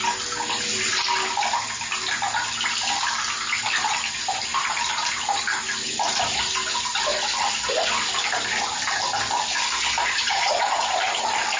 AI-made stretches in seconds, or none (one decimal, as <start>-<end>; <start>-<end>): 10.0-11.0